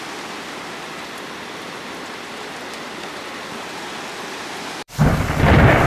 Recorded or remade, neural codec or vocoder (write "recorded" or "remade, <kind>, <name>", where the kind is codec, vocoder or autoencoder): remade, vocoder, BigVGAN v2